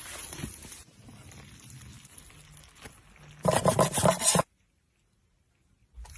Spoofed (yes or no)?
no